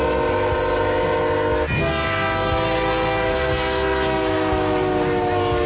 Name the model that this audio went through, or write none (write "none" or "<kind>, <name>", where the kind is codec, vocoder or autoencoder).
none